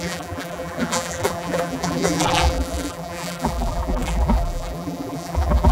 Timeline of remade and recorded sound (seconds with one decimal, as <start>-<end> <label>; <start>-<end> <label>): 0.0-5.7 remade